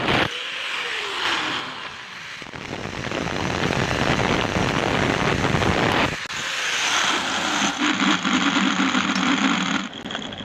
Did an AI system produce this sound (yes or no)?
no